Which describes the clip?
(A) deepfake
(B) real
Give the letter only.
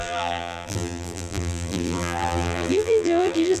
A